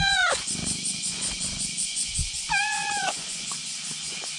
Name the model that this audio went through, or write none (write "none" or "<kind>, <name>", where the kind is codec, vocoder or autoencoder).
vocoder, Vocos